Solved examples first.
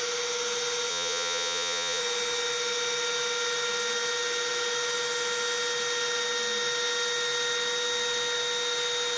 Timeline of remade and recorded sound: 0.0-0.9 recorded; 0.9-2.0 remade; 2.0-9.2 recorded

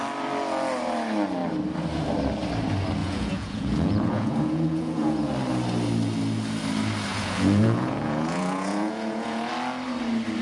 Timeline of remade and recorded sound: 0.0-3.0 recorded; 3.0-5.3 remade; 5.3-7.1 recorded; 7.1-9.5 remade; 9.5-10.4 recorded

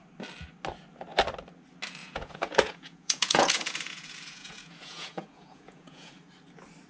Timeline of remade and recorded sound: 0.0-2.0 recorded; 2.0-6.1 remade; 6.1-6.9 recorded

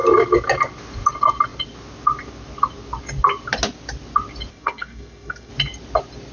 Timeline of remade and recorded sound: 0.0-4.5 recorded; 4.5-5.5 remade; 5.5-6.3 recorded

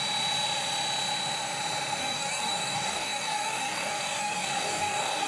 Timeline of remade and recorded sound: 0.0-2.0 recorded; 2.0-5.3 remade